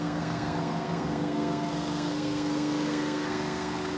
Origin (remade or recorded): remade